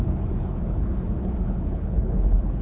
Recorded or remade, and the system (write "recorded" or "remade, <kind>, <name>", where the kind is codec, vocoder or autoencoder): remade, codec, HILCodec